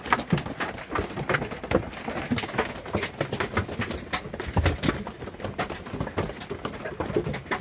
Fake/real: real